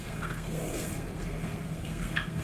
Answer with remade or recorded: remade